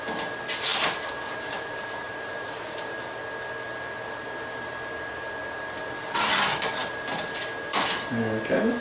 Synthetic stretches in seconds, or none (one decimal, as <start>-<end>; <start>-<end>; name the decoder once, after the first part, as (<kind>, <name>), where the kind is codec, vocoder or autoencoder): 0.7-3.0 (vocoder, BigVGAN v2)